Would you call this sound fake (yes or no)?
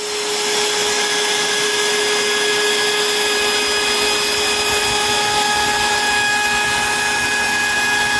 no